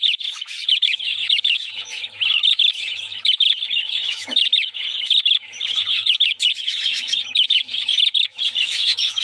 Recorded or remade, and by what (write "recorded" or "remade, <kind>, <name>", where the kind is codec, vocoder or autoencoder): remade, autoencoder, DAC-VAE